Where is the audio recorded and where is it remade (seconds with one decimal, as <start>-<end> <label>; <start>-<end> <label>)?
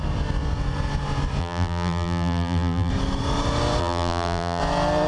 0.0-1.4 recorded; 1.4-2.9 remade; 2.9-3.8 recorded; 3.8-4.6 remade; 4.6-5.1 recorded